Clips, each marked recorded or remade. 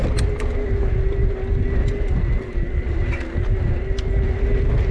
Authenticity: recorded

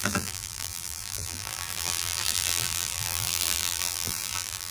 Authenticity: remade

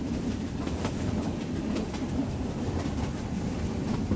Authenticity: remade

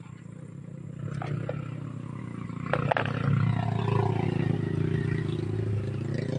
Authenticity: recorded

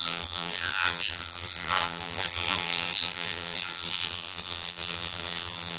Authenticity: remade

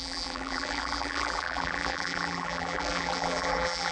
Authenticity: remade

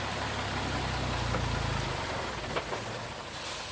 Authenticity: recorded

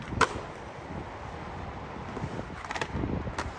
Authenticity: remade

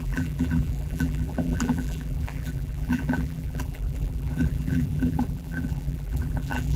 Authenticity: remade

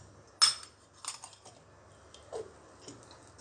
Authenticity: recorded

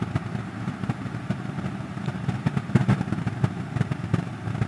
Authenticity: remade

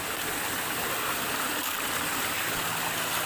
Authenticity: recorded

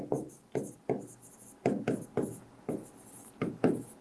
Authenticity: recorded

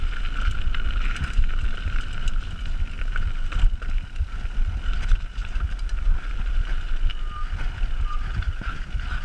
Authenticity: recorded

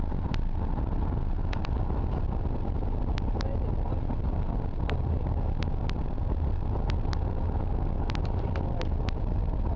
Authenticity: recorded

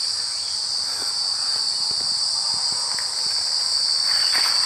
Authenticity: recorded